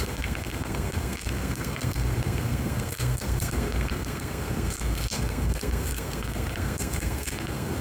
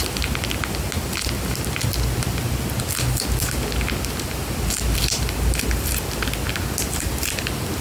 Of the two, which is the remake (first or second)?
first